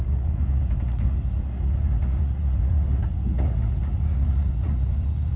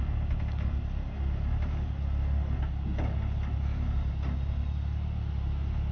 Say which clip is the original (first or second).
second